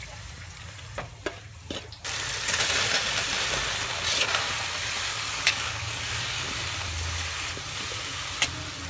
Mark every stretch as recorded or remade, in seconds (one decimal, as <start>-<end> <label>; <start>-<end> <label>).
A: 0.0-5.1 recorded; 5.1-6.5 remade; 6.5-8.9 recorded